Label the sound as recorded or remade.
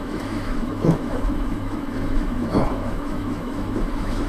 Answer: remade